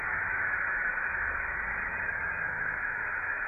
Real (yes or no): no